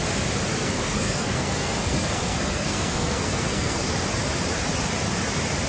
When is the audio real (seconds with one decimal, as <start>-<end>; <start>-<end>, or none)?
0.0-0.5; 3.9-5.7